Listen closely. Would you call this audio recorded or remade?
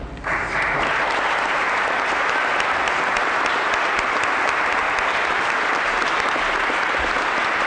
recorded